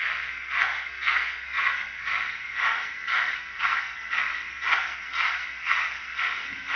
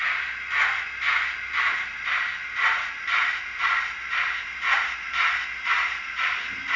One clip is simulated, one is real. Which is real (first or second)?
second